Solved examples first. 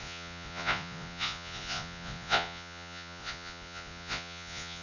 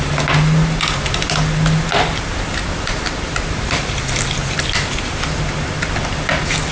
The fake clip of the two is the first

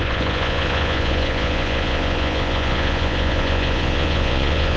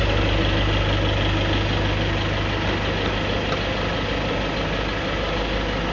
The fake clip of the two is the first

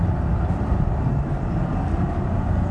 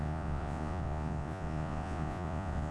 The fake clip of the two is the second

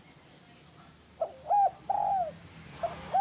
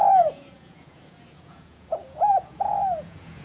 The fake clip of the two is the second